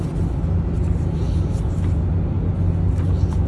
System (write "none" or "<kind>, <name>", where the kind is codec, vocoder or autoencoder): none